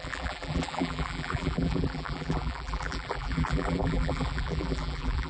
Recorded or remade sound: remade